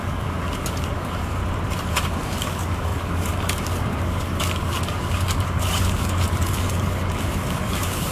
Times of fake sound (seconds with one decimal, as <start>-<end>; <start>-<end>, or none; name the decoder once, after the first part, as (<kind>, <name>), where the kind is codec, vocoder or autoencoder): 0.0-1.4 (codec, DAC); 1.9-8.1